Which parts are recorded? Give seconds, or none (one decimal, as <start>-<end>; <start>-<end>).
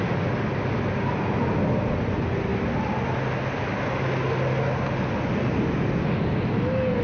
0.0-7.0